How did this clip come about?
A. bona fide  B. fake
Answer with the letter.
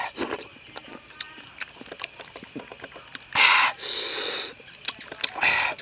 A